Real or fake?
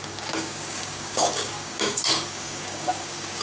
fake